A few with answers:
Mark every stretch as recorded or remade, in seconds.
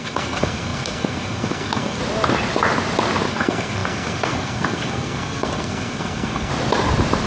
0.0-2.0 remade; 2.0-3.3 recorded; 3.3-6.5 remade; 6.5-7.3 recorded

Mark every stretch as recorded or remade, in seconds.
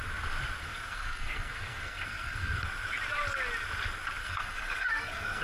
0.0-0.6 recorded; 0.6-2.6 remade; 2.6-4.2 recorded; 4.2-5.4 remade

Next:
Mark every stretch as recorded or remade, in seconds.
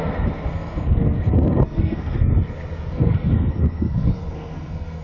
0.0-2.3 remade; 2.3-2.9 recorded; 2.9-5.0 remade